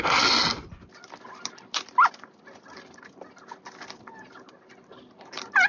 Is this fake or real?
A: real